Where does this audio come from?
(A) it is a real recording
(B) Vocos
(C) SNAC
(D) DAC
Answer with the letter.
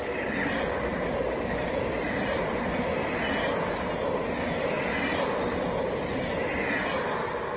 A